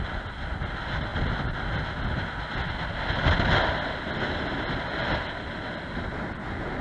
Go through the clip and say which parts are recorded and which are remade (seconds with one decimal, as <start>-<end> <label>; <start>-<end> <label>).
0.0-6.8 recorded